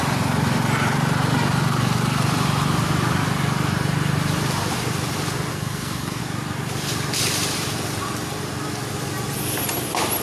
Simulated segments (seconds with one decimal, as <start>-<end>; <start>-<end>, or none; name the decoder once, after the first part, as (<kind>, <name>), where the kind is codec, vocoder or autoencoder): 5.5-6.2 (codec, SNAC)